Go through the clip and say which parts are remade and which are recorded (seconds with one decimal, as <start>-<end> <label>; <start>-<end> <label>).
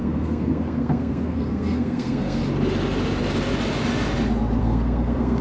0.0-2.4 remade; 2.4-4.6 recorded; 4.6-5.4 remade